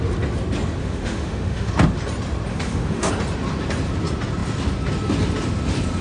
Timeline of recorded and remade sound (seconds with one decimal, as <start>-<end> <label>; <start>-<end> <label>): 0.0-0.8 recorded; 0.8-1.7 remade; 1.7-2.5 recorded; 2.5-3.1 remade; 3.1-6.0 recorded